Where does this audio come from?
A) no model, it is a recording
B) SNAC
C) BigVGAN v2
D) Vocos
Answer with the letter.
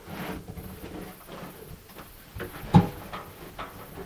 A